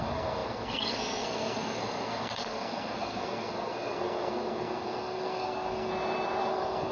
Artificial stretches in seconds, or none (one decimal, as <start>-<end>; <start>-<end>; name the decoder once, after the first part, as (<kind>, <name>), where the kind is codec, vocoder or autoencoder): 0.0-5.9 (codec, SNAC); 6.5-6.9